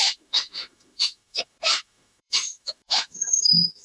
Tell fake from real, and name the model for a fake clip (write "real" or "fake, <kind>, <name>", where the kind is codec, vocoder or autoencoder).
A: fake, autoencoder, DAC-VAE